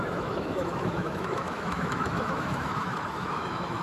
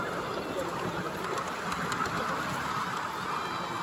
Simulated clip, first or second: first